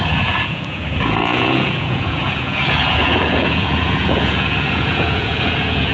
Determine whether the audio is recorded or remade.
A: remade